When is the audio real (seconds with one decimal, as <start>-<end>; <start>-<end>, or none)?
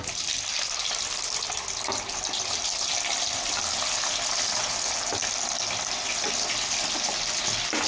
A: 0.0-7.9